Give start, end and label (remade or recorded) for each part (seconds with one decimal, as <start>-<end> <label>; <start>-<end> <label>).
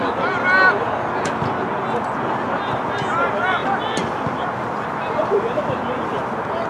0.0-6.7 recorded